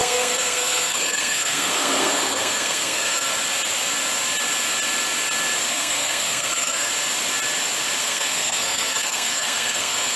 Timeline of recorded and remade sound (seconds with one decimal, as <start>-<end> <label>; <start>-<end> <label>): 0.0-3.3 remade; 3.3-5.7 recorded; 5.7-6.9 remade; 6.9-8.0 recorded; 8.0-10.2 remade